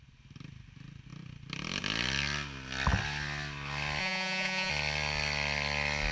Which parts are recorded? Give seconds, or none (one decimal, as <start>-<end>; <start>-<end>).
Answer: 0.0-4.0; 4.7-6.1